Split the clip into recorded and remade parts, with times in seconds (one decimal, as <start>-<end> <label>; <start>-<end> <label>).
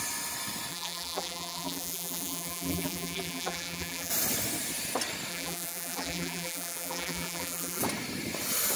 0.0-0.7 recorded; 0.7-4.1 remade; 4.1-5.3 recorded; 5.3-7.8 remade; 7.8-8.8 recorded